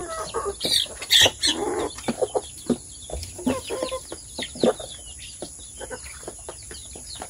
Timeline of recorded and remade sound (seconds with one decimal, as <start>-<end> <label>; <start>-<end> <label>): 0.0-1.1 recorded; 1.1-1.5 remade; 1.5-5.2 recorded; 5.2-7.3 remade